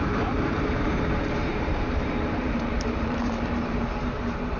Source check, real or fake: fake